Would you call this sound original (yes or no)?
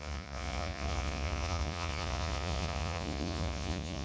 no